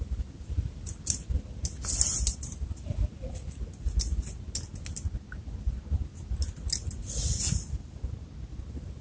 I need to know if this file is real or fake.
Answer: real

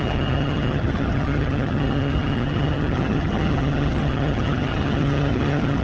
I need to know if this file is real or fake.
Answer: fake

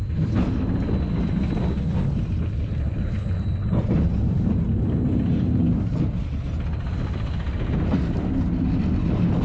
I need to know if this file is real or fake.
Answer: real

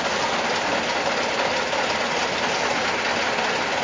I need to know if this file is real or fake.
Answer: real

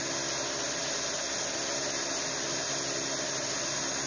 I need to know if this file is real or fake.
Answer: real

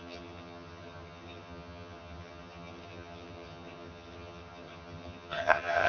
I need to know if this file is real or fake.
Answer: fake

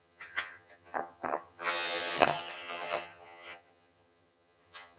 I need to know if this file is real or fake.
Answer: fake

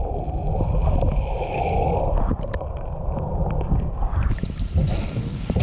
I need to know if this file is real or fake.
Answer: real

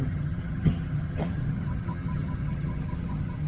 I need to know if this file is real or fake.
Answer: fake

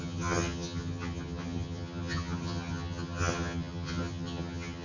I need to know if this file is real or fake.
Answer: fake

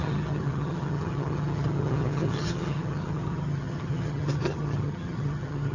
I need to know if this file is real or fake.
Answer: fake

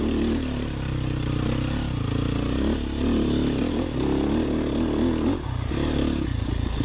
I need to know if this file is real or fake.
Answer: real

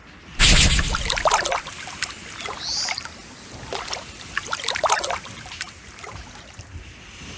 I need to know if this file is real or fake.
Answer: real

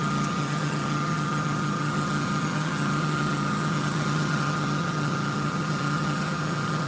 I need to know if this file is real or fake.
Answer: fake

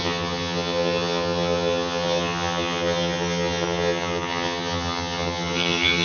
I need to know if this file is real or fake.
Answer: fake